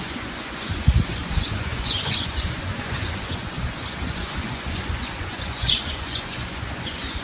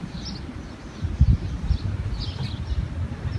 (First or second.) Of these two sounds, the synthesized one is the first